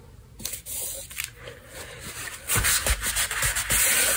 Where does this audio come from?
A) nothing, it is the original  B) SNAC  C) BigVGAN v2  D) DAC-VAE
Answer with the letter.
A